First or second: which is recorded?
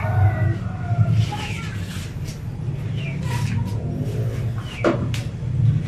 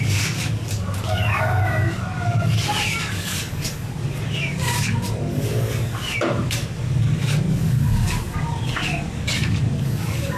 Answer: first